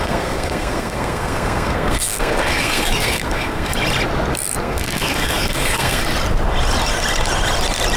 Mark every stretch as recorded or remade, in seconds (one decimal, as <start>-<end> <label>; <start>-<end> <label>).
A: 0.0-3.7 remade; 3.7-4.6 recorded; 4.6-6.0 remade; 6.0-8.0 recorded